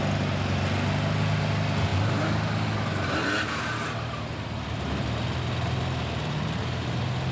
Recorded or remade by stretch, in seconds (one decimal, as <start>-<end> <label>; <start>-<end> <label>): 0.0-7.3 recorded